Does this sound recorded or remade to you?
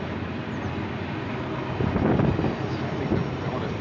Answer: recorded